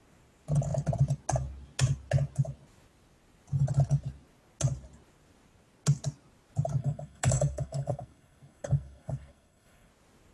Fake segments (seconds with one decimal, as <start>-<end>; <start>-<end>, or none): 6.8-9.9